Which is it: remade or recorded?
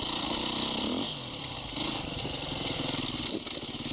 remade